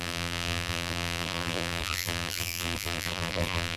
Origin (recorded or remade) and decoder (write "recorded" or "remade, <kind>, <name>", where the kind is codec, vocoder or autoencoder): remade, vocoder, BigVGAN v2